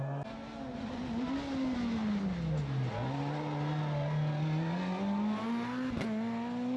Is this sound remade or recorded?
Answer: recorded